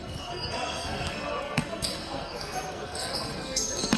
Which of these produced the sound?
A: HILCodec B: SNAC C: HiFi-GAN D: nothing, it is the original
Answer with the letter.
B